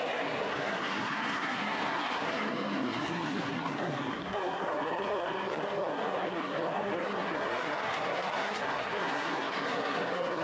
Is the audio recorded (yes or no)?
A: no